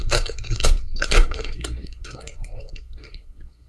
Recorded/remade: remade